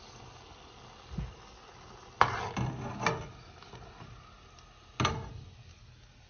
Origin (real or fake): real